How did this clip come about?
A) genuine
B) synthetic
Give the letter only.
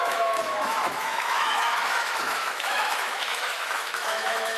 B